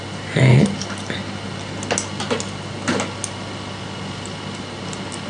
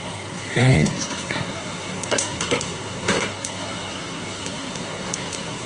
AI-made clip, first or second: second